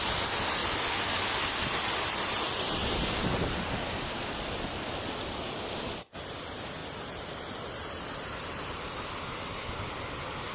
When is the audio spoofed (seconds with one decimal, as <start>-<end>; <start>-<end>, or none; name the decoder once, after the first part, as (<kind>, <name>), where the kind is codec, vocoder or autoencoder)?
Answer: none